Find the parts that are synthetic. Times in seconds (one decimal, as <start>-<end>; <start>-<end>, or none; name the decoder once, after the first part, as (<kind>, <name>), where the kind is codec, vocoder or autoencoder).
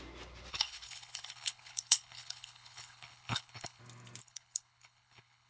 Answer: 0.5-3.8 (codec, HILCodec); 4.2-5.5